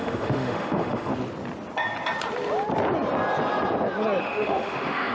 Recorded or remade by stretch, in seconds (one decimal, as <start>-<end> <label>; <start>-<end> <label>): 0.0-1.1 remade; 1.1-4.2 recorded; 4.2-5.1 remade